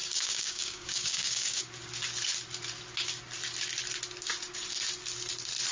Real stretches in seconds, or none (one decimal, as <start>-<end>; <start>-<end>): 1.6-5.7